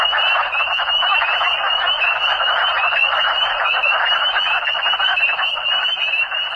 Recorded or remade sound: recorded